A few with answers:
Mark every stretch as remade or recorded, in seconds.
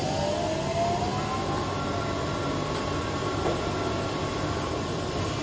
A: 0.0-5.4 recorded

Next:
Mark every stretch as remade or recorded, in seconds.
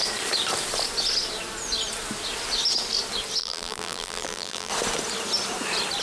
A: 0.0-3.4 recorded; 3.4-4.7 remade; 4.7-6.0 recorded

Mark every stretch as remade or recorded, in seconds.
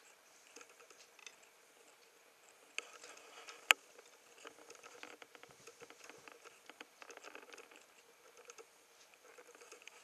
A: 0.0-10.0 recorded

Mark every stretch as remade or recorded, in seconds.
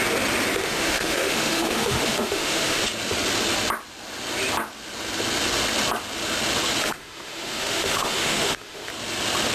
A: 0.0-0.6 recorded; 0.6-2.8 remade; 2.8-6.8 recorded; 6.8-8.9 remade; 8.9-9.5 recorded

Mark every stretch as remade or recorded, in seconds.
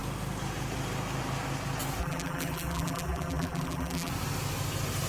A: 0.0-2.0 recorded; 2.0-4.1 remade; 4.1-5.1 recorded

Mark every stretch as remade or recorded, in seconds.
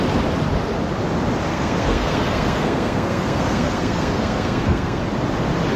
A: 0.0-1.5 recorded; 1.5-5.0 remade; 5.0-5.8 recorded